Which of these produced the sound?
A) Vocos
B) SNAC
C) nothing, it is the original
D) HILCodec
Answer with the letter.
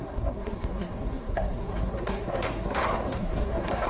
B